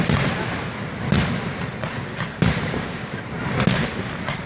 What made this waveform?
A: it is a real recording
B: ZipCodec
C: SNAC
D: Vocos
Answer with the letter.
A